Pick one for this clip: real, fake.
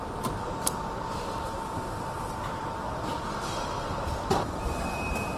fake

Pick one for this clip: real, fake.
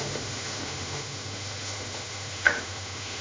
fake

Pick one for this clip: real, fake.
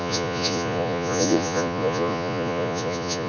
fake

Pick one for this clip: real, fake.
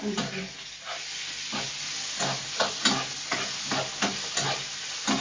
real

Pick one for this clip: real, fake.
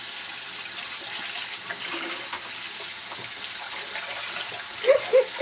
real